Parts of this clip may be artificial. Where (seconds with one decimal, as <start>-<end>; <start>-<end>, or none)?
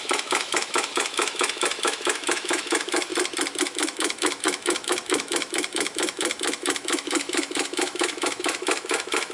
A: 0.0-3.1; 3.6-9.3